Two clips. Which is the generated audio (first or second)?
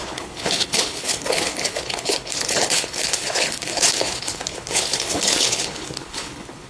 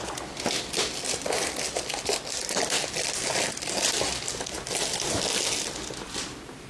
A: first